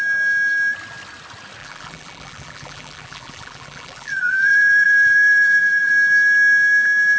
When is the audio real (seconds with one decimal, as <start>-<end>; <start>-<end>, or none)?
0.0-1.6; 5.9-7.2